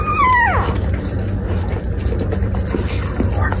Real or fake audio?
real